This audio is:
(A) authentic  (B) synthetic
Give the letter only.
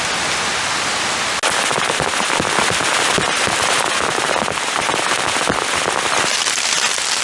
A